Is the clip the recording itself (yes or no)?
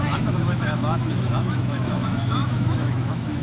no